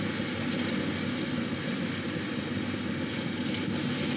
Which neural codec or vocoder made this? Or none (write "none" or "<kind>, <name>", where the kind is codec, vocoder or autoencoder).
none